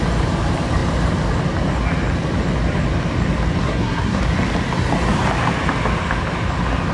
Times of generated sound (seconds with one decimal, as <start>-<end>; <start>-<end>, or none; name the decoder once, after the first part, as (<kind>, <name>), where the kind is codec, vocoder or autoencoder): 3.6-4.2 (codec, SNAC)